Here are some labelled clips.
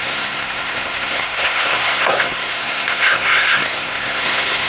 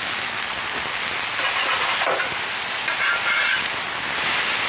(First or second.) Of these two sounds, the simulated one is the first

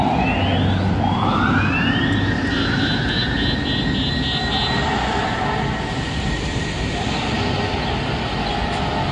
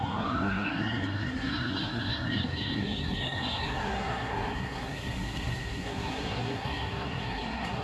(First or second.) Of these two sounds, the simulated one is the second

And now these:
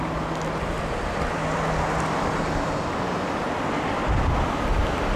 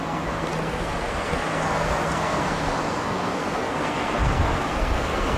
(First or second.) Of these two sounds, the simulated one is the second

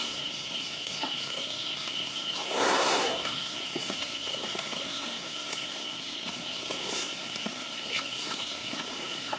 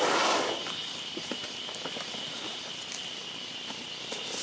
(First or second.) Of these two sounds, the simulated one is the first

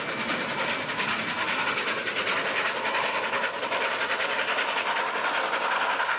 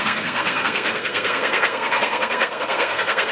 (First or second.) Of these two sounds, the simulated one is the second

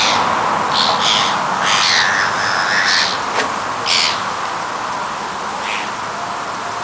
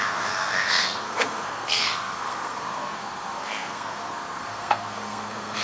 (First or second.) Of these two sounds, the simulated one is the second